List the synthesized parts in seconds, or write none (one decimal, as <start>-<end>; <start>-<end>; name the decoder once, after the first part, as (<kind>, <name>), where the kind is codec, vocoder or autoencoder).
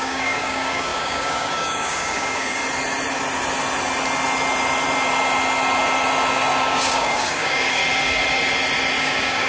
0.0-2.6 (codec, DAC); 6.6-7.8; 9.0-9.5